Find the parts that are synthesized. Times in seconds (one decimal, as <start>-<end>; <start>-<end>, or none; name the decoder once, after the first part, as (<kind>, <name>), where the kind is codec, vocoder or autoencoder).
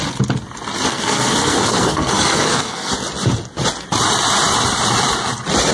0.9-2.9 (codec, SNAC)